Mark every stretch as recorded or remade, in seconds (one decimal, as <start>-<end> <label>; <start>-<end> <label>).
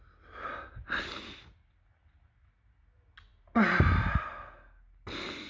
0.0-5.5 recorded